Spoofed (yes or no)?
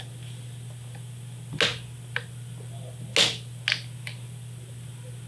no